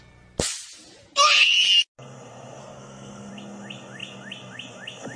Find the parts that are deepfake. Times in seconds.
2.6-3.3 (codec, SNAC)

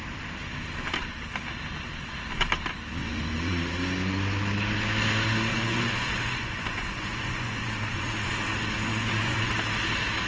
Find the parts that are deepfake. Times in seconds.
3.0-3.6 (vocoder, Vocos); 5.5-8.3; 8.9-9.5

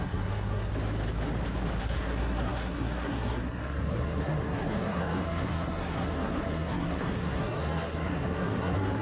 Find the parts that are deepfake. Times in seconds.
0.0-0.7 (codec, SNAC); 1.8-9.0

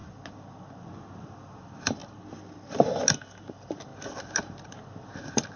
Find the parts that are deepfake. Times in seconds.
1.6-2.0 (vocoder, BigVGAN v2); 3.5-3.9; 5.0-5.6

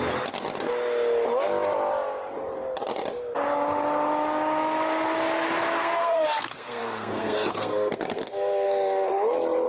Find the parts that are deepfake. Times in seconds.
5.8-9.1 (codec, SNAC)

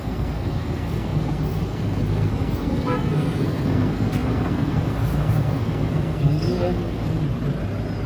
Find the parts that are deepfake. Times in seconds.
0.0-7.2 (codec, SNAC)

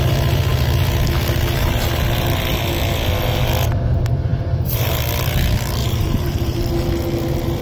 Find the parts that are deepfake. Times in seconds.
5.8-6.6 (vocoder, BigVGAN v2)

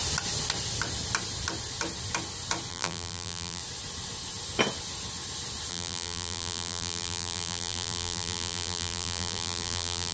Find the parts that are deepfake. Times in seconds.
2.7-3.6 (vocoder, BigVGAN v2); 5.7-10.1